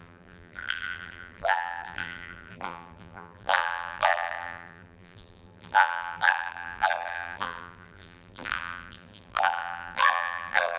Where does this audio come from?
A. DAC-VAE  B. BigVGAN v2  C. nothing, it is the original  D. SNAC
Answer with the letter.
B